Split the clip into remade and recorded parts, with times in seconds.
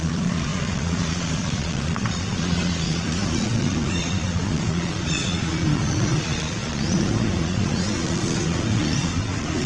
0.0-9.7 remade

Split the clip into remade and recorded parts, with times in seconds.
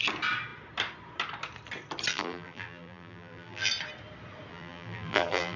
0.0-2.1 recorded; 2.1-3.7 remade; 3.7-4.5 recorded; 4.5-5.6 remade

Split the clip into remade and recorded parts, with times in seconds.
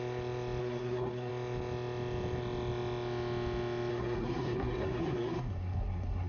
0.0-0.6 recorded; 0.6-1.3 remade; 1.3-3.9 recorded; 3.9-6.3 remade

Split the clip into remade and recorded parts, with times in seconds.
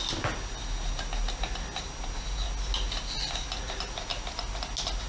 0.0-4.1 recorded; 4.1-4.6 remade; 4.6-5.1 recorded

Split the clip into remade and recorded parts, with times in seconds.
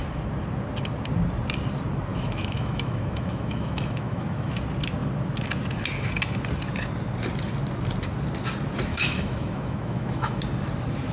0.0-2.1 recorded; 2.1-4.6 remade; 4.6-8.9 recorded; 8.9-10.4 remade; 10.4-11.1 recorded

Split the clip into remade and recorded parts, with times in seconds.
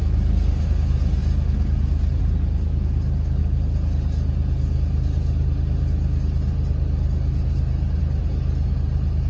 0.0-9.3 recorded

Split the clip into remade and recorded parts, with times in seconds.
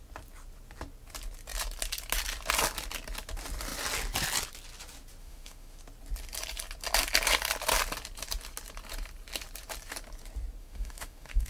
0.0-5.2 recorded; 5.2-5.8 remade; 5.8-10.6 recorded; 10.6-11.5 remade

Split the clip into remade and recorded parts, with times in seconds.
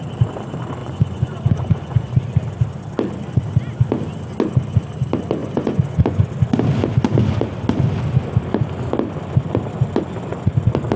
0.0-0.8 recorded; 0.8-2.1 remade; 2.1-5.4 recorded; 5.4-6.3 remade; 6.3-11.0 recorded